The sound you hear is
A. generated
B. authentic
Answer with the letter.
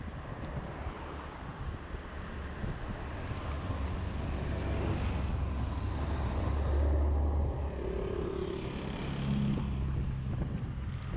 B